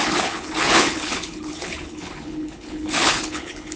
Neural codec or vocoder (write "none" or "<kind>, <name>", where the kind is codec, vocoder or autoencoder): codec, HILCodec